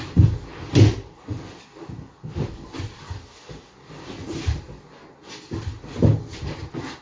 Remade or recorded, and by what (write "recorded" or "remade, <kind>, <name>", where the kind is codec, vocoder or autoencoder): recorded